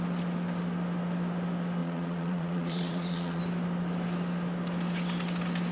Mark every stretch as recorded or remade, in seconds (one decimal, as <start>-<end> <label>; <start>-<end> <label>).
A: 0.0-1.8 recorded; 1.8-3.4 remade; 3.4-5.7 recorded